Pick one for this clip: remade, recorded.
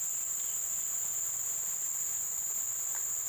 recorded